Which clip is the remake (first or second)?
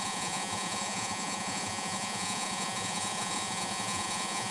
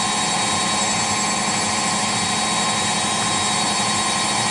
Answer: first